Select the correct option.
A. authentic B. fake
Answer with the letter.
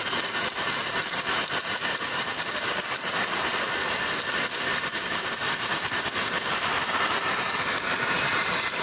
B